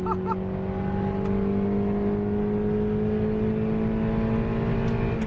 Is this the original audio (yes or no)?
yes